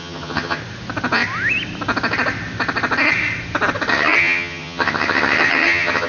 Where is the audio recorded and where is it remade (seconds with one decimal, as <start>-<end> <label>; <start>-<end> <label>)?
0.0-0.6 remade; 0.6-3.9 recorded; 3.9-6.1 remade